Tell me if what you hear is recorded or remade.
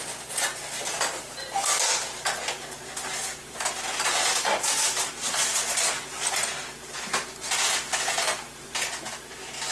recorded